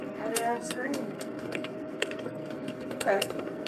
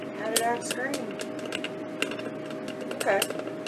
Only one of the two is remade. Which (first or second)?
first